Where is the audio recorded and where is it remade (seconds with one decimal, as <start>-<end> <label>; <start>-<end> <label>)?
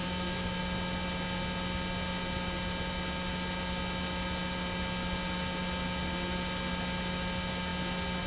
0.0-0.6 remade; 0.6-8.3 recorded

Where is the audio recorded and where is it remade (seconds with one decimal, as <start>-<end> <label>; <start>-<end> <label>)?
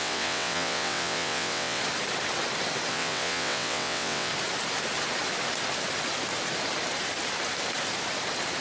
0.0-1.8 remade; 1.8-2.9 recorded; 2.9-4.3 remade; 4.3-8.6 recorded